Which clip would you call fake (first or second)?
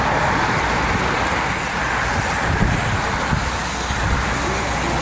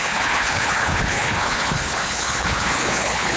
second